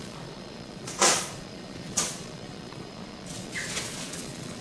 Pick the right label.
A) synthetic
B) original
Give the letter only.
A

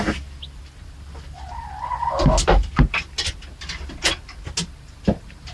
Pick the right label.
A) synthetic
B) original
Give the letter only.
B